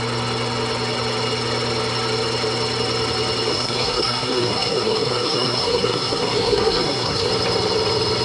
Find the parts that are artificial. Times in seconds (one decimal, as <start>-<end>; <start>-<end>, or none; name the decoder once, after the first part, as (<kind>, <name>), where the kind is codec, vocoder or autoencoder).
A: 3.5-7.3 (codec, SNAC)